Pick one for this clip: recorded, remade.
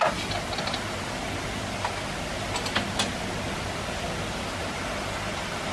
remade